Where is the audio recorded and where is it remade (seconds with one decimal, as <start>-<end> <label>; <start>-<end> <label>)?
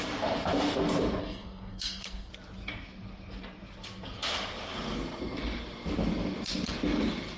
0.0-1.2 recorded; 1.2-2.3 remade; 2.3-7.4 recorded